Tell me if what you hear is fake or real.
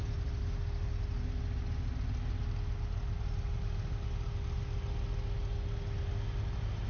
real